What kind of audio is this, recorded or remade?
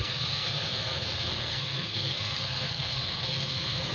remade